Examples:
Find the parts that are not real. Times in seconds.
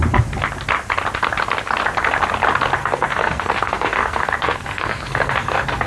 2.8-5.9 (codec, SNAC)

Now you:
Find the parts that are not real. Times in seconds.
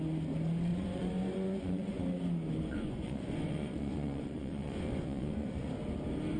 0.7-2.0 (vocoder, Vocos); 2.7-5.7